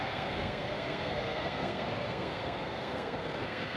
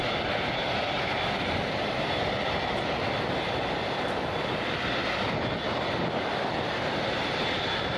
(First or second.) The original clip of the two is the second